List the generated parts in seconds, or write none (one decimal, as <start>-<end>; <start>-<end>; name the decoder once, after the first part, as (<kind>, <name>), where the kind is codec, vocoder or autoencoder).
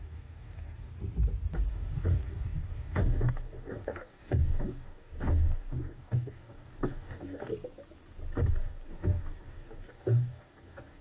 0.0-0.9 (codec, DAC); 1.7-7.5; 8.5-11.0